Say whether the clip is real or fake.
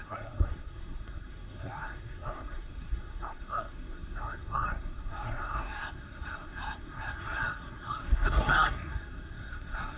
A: fake